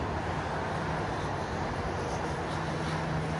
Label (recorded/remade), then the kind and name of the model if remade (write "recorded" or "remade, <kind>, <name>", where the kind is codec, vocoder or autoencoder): recorded